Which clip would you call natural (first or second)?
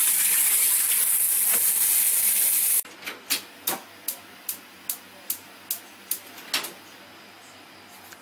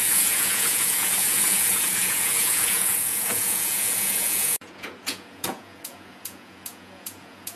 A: first